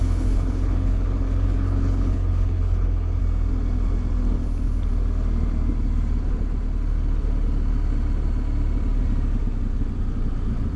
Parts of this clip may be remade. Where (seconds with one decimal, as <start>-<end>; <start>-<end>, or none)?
0.0-3.2